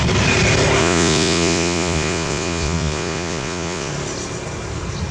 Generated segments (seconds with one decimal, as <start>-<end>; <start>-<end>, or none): 0.8-3.9